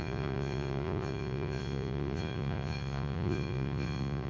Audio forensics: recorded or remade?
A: remade